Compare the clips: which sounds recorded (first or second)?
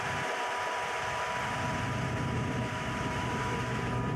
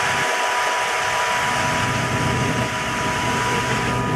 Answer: second